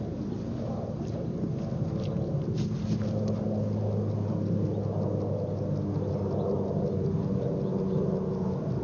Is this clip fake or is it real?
real